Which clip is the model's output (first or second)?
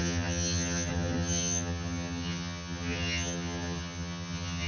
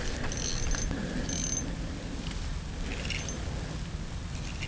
first